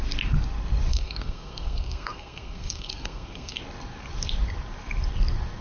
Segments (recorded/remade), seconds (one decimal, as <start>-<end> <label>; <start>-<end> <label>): 0.0-0.9 recorded; 0.9-3.6 remade; 3.6-5.6 recorded